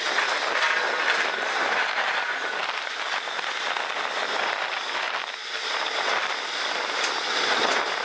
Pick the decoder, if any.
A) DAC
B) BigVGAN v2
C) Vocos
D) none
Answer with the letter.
B